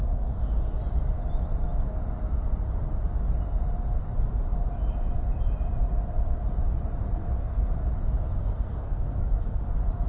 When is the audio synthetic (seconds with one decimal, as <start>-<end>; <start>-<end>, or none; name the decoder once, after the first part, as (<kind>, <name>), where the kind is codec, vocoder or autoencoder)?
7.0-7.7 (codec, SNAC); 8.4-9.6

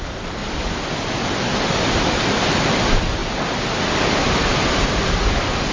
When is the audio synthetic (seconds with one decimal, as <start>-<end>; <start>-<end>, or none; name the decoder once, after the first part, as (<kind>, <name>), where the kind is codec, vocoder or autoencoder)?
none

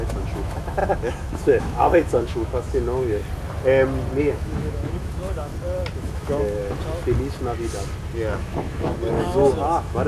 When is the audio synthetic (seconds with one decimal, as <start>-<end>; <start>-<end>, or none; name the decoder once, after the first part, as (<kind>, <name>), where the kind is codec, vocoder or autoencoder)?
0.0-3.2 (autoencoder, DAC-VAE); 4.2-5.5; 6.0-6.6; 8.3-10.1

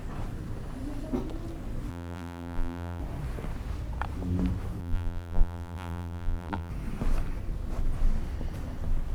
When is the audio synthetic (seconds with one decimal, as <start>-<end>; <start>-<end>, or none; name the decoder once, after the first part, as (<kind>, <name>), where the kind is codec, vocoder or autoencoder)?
1.9-3.0 (vocoder, BigVGAN v2); 4.8-6.7